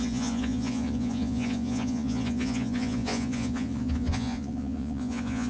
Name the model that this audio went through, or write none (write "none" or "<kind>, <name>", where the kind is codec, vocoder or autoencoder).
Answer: vocoder, Vocos